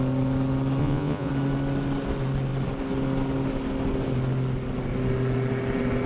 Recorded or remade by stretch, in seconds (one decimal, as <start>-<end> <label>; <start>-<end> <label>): 0.0-0.8 recorded; 0.8-1.3 remade; 1.3-6.1 recorded